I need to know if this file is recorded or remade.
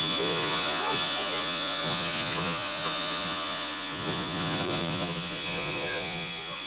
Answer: remade